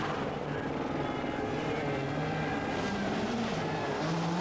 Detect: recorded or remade recorded